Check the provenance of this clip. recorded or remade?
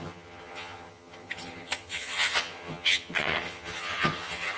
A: remade